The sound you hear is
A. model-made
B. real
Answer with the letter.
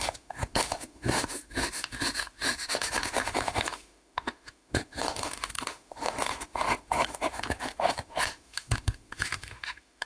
A